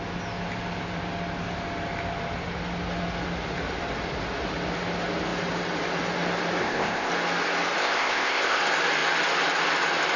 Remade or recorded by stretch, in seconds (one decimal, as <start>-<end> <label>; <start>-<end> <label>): 0.0-6.6 recorded; 6.6-7.1 remade; 7.1-7.8 recorded; 7.8-8.6 remade; 8.6-10.2 recorded